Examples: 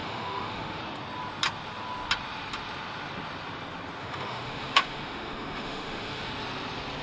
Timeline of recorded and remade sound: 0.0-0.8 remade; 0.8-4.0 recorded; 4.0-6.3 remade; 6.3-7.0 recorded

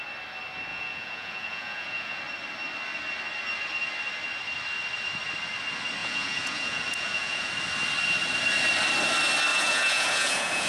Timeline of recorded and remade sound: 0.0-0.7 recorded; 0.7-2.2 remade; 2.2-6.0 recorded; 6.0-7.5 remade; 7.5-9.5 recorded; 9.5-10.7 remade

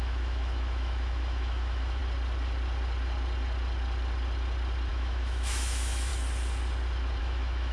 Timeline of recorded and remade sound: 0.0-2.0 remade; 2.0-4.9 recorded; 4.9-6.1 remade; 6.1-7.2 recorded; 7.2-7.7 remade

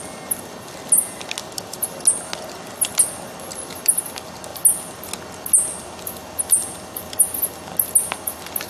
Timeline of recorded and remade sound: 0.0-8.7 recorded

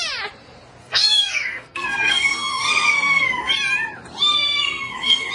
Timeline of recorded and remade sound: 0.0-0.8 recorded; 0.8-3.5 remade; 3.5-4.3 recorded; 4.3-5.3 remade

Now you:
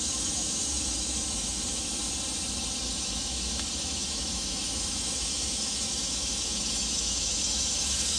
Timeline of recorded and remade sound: 0.0-2.0 remade; 2.0-2.8 recorded; 2.8-8.2 remade

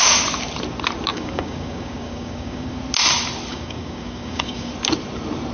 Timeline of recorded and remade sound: 0.0-1.1 recorded; 1.1-2.8 remade; 2.8-3.5 recorded; 3.5-4.7 remade; 4.7-5.5 recorded

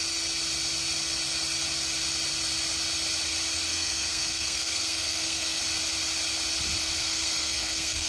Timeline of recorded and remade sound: 0.0-3.7 recorded; 3.7-5.6 remade; 5.6-7.0 recorded; 7.0-8.1 remade